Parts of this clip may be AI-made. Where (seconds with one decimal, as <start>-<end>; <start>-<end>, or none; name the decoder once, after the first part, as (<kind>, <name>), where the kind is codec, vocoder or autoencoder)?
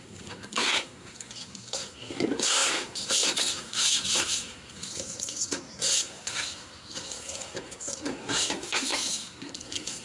0.0-10.0 (codec, SNAC)